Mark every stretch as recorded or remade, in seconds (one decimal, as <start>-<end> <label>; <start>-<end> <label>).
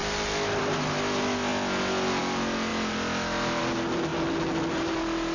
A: 0.0-5.3 recorded